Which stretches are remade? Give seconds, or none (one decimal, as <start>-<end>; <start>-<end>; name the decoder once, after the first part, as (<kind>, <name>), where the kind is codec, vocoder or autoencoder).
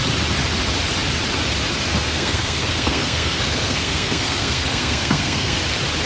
1.9-5.6 (codec, SNAC)